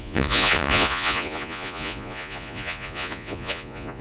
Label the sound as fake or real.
fake